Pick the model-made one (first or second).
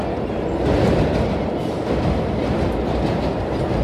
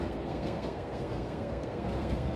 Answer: second